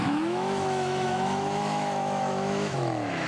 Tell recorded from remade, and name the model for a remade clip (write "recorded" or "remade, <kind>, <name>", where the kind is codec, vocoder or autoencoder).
remade, autoencoder, DAC-VAE